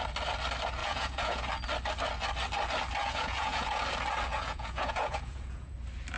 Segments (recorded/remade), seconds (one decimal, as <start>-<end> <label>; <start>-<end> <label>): 0.0-0.8 recorded; 0.8-1.5 remade; 1.5-3.0 recorded; 3.0-3.8 remade; 3.8-4.3 recorded; 4.3-5.7 remade; 5.7-6.2 recorded